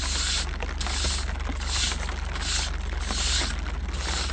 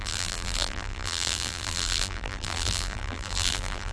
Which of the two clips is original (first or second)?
first